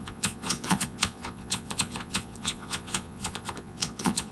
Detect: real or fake fake